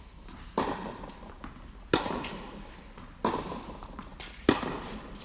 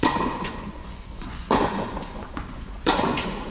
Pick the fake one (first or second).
second